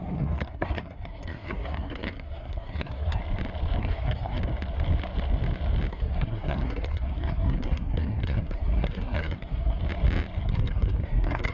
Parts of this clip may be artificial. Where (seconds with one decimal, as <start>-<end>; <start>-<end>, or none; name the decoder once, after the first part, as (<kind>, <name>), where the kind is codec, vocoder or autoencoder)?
0.0-3.2 (codec, SNAC); 3.8-4.4; 5.9-9.8; 10.4-11.5